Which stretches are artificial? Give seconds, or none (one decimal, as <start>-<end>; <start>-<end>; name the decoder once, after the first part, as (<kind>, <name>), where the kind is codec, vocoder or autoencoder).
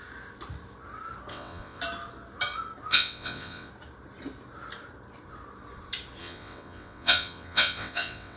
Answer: 1.3-1.8 (vocoder, WaveNeXt); 2.9-3.7; 6.2-8.4